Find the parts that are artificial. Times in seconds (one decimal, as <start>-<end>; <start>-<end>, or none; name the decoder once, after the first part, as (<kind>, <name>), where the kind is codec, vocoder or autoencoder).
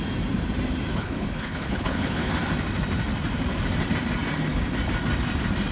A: 0.9-2.3 (codec, HILCodec)